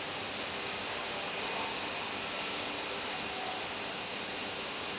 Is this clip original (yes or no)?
yes